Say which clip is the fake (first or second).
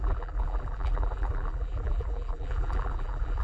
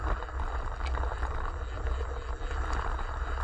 first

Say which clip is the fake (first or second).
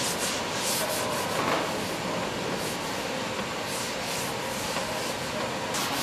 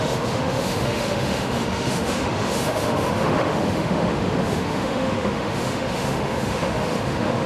second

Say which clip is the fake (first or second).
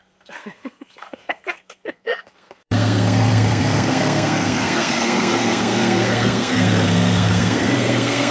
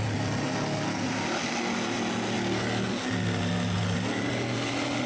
first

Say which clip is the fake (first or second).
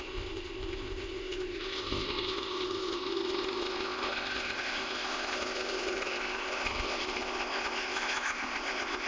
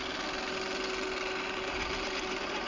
first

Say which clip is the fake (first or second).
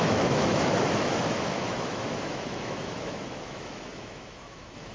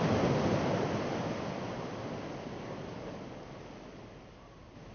first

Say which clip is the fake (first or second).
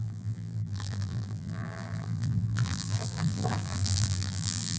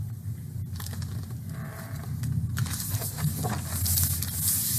first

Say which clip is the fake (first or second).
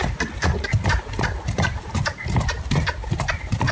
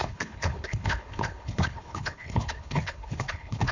second